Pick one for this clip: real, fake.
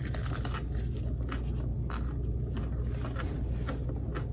real